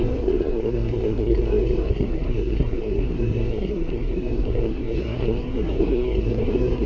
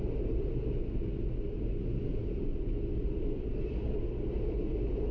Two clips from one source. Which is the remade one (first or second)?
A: first